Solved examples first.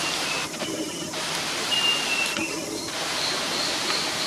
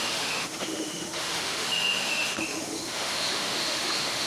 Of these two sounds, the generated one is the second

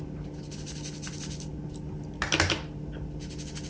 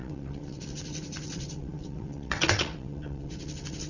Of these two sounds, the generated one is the second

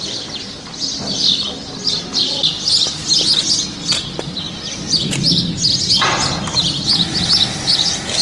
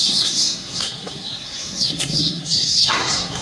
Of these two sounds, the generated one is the second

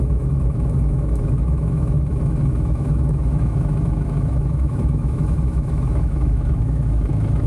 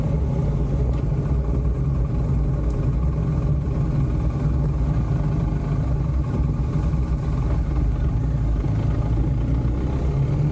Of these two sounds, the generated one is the first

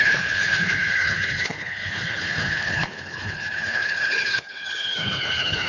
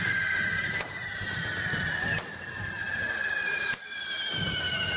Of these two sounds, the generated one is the first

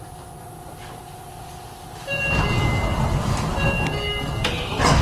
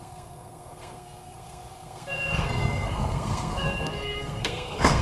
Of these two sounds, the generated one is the second